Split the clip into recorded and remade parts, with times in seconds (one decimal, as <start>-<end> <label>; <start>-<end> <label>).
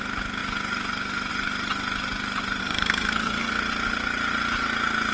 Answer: 0.0-2.6 recorded; 2.6-3.5 remade; 3.5-5.1 recorded